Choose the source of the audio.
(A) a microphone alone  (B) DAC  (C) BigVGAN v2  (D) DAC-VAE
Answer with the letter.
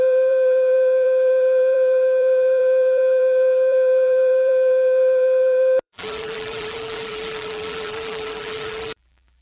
C